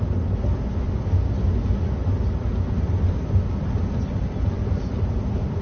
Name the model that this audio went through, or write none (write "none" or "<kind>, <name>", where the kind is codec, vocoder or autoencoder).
none